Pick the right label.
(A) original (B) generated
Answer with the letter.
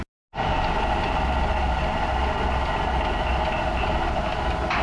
A